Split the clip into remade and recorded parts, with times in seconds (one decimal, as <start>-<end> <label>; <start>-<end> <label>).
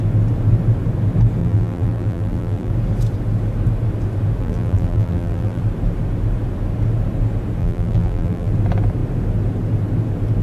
0.0-1.4 recorded; 1.4-2.7 remade; 2.7-4.4 recorded; 4.4-5.6 remade; 5.6-7.6 recorded; 7.6-8.5 remade; 8.5-10.4 recorded